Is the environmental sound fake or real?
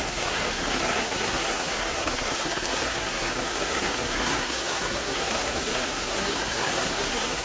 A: fake